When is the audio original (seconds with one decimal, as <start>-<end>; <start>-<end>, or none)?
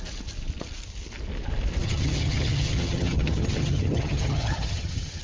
0.0-1.8